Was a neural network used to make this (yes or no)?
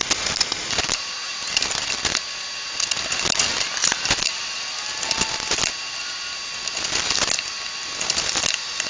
no